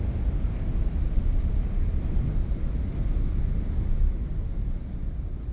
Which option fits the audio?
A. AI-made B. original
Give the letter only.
B